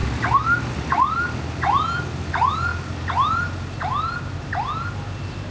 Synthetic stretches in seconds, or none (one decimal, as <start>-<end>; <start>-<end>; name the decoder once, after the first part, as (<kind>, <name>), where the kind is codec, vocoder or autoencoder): none